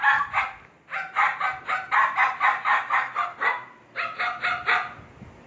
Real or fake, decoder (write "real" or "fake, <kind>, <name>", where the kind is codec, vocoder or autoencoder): real